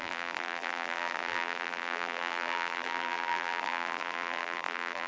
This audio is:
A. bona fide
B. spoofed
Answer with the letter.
B